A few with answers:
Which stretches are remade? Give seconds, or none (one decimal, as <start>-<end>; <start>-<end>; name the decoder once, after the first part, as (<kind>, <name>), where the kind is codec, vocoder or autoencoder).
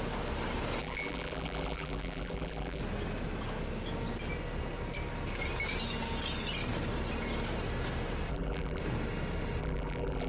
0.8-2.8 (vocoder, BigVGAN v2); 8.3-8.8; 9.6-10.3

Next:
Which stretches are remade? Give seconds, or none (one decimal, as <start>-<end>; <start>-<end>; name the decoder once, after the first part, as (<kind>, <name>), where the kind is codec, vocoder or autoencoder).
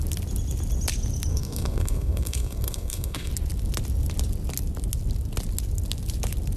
1.3-3.3 (codec, SNAC)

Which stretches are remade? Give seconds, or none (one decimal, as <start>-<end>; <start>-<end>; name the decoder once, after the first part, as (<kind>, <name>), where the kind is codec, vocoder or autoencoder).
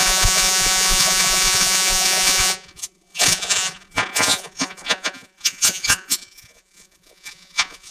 0.0-7.9 (vocoder, Vocos)